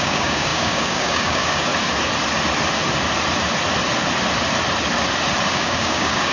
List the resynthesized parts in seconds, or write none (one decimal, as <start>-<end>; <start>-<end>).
0.0-1.7; 5.5-6.3